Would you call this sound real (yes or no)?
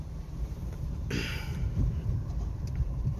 no